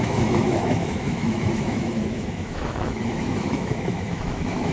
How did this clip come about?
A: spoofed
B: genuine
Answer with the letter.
A